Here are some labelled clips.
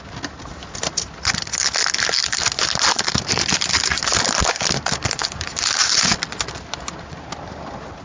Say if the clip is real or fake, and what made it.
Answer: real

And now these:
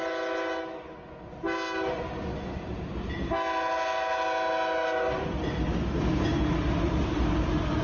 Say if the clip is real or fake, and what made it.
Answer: real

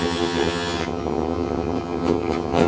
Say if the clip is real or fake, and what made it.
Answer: fake, vocoder, HiFi-GAN